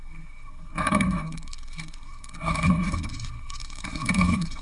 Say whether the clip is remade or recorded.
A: remade